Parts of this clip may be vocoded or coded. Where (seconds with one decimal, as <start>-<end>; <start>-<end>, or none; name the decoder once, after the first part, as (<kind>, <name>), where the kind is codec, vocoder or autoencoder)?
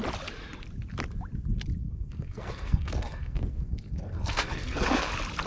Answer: 1.8-5.1 (codec, SNAC)